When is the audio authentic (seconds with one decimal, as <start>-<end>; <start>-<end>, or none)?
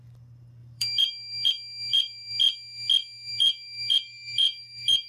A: 0.0-0.6; 1.5-1.9; 2.4-3.3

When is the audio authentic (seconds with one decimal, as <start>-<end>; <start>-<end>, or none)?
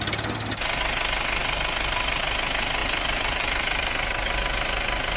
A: 0.0-2.8; 3.9-5.2